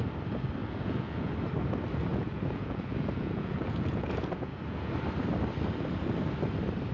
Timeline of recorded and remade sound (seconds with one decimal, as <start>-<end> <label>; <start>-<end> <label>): 0.0-0.6 recorded; 0.6-1.3 remade; 1.3-2.1 recorded; 2.1-4.9 remade; 4.9-6.9 recorded